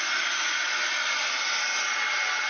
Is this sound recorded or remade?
recorded